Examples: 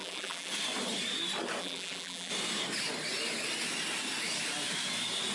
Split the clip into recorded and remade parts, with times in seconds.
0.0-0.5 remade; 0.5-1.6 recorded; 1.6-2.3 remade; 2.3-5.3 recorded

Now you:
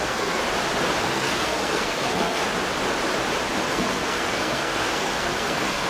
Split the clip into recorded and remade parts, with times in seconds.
0.0-0.4 remade; 0.4-1.0 recorded; 1.0-2.4 remade; 2.4-3.6 recorded; 3.6-5.9 remade

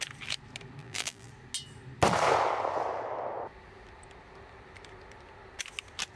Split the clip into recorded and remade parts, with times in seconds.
0.0-0.8 recorded; 0.8-1.3 remade; 1.3-6.2 recorded

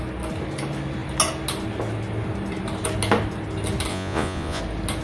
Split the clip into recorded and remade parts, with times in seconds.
0.0-3.9 recorded; 3.9-4.6 remade; 4.6-5.0 recorded